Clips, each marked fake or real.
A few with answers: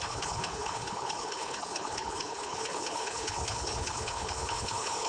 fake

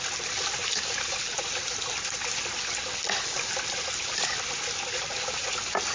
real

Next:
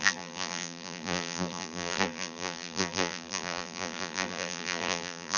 fake